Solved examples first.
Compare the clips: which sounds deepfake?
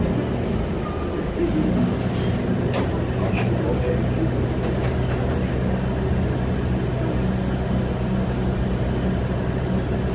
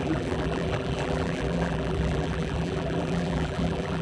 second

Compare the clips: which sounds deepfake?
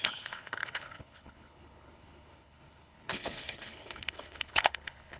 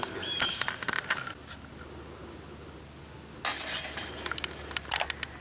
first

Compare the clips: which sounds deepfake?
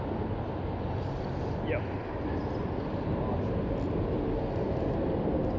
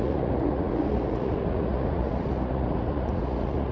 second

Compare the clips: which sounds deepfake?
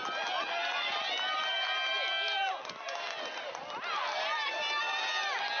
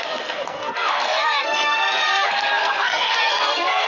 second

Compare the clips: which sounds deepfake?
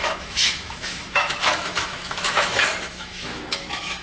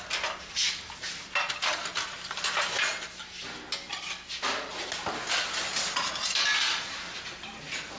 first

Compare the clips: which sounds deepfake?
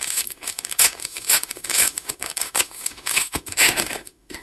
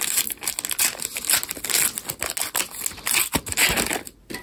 first